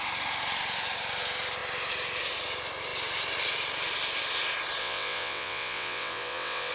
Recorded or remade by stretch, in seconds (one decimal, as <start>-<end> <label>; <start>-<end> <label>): 0.0-4.8 recorded; 4.8-6.7 remade